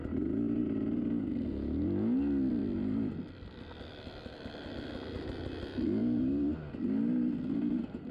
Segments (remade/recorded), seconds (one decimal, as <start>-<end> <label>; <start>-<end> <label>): 0.0-2.6 recorded; 2.6-5.2 remade; 5.2-8.1 recorded